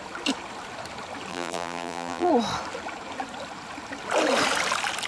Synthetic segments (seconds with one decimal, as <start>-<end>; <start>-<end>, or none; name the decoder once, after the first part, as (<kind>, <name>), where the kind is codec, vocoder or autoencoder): 1.3-2.3 (vocoder, BigVGAN v2)